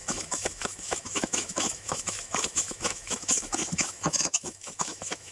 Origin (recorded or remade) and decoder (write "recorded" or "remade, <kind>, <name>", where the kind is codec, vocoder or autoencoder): remade, autoencoder, DAC-VAE